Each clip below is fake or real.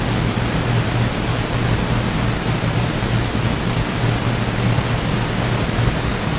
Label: real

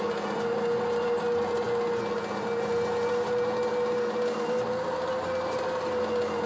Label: real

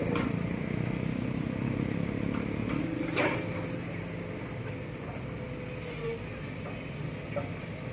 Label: real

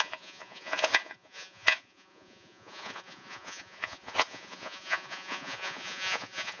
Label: fake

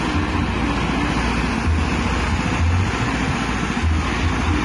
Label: real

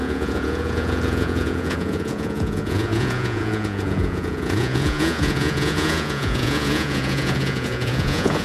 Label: fake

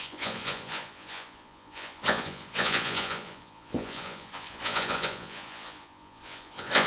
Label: fake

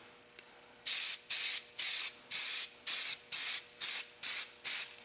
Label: real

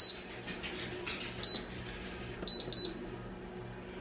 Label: real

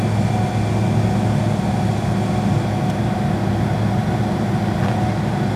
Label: real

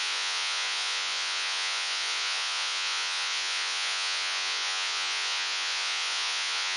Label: fake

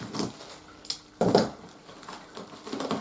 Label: real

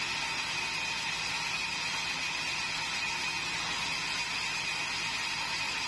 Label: real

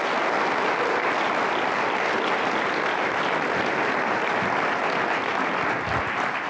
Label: real